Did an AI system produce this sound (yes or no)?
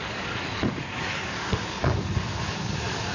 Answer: yes